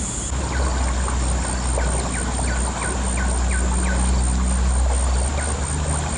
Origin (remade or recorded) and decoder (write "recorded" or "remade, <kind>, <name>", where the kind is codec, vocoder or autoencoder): recorded